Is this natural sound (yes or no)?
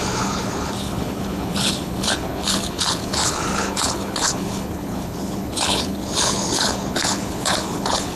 no